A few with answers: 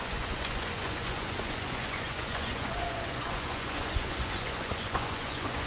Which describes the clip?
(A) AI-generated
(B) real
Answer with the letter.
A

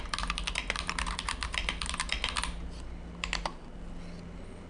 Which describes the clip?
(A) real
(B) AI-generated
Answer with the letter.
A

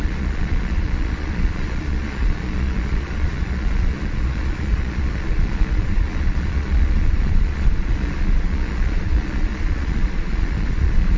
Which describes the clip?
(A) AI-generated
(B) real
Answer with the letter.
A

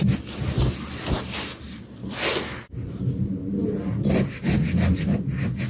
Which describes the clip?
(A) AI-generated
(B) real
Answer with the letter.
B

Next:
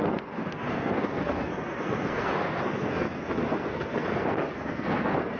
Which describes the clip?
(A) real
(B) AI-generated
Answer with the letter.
B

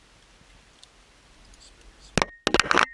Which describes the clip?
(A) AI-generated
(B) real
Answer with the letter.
B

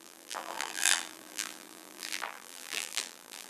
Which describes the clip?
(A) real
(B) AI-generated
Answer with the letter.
B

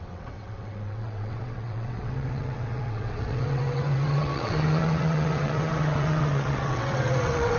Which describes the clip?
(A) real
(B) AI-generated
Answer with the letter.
B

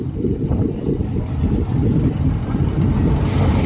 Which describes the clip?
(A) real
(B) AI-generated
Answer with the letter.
A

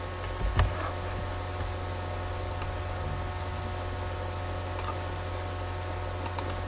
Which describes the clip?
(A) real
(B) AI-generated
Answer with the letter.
A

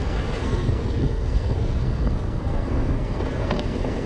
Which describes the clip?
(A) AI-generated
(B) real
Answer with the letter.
A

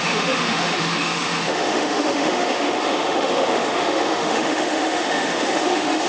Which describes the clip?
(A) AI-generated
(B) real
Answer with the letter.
A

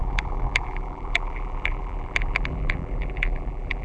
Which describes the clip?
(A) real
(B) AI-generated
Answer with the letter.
B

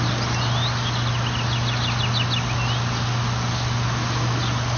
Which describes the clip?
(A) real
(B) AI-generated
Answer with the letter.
A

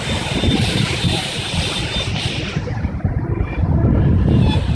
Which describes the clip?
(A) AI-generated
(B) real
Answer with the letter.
B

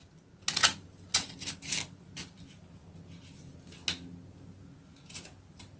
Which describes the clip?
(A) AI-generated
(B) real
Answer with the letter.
B